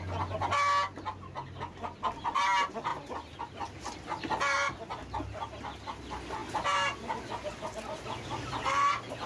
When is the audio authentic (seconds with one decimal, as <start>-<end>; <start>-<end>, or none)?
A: 0.0-9.3

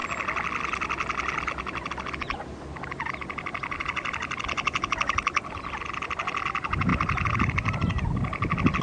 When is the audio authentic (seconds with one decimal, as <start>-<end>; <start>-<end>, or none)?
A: 0.0-8.8

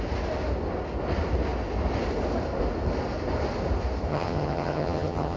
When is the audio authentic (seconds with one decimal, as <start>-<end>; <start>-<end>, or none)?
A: 0.0-4.1

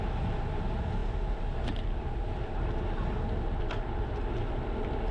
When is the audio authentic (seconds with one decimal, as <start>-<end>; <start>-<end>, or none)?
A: 0.0-5.1

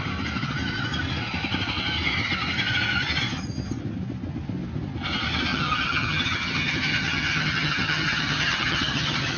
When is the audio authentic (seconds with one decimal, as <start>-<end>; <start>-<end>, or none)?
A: 0.0-5.5

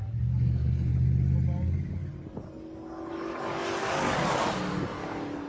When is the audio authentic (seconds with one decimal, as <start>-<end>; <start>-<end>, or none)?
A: 0.9-3.1

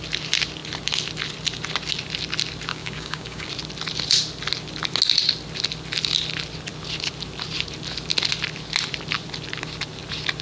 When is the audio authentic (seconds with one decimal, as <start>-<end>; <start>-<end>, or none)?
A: 0.0-2.7; 3.5-10.4